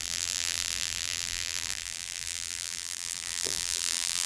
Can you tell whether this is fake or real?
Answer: fake